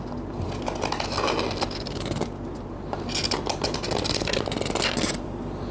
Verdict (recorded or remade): recorded